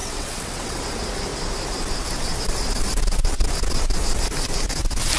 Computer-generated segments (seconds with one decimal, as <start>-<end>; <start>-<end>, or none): 0.0-0.8